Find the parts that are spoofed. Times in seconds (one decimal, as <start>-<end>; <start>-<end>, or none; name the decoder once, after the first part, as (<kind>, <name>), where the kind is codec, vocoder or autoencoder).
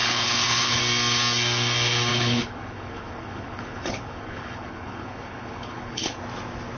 0.0-0.8 (codec, HILCodec); 2.1-6.2